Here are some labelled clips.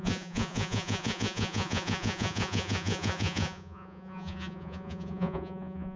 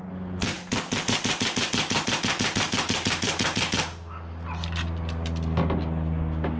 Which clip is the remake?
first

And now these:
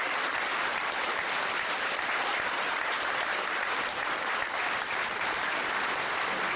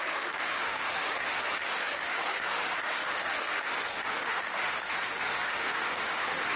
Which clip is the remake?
second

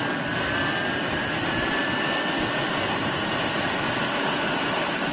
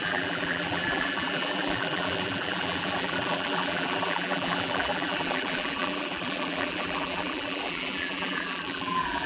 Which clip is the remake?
second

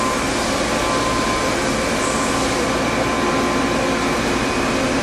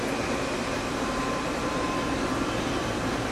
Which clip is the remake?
second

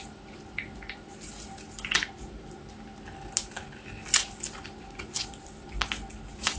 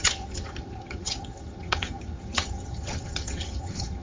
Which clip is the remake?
second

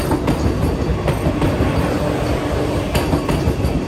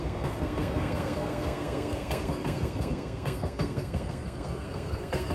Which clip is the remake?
second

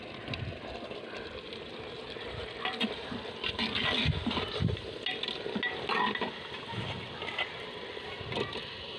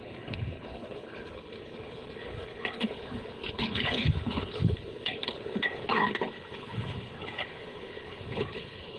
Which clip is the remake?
second